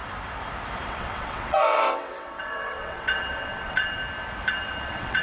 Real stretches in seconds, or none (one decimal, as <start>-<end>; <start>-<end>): 0.0-0.9; 4.0-4.5